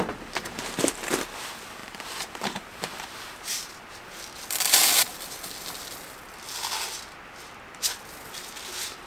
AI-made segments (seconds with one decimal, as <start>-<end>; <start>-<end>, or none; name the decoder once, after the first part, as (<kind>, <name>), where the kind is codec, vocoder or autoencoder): 1.8-3.9 (vocoder, BigVGAN v2)